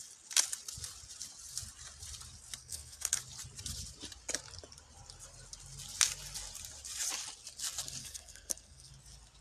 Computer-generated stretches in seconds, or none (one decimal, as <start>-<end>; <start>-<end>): 2.6-3.2; 8.0-8.9